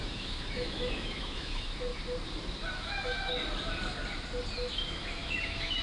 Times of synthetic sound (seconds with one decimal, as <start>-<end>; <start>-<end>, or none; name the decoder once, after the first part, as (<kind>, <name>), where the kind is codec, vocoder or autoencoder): 0.0-1.9 (autoencoder, DAC-VAE); 2.7-3.3; 4.7-5.8